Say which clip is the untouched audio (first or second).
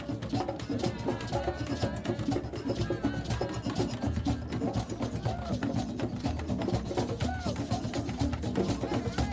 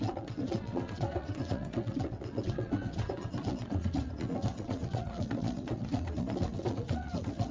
first